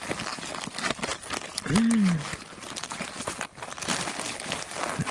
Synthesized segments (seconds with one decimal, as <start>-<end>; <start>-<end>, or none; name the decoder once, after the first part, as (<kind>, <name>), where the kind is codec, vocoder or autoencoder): 1.1-1.6 (vocoder, BigVGAN v2); 2.3-3.8